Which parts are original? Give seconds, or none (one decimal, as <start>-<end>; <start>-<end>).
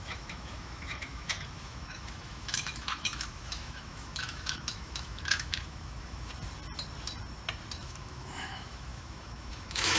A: 6.3-7.8